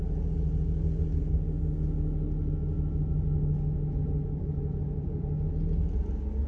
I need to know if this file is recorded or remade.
recorded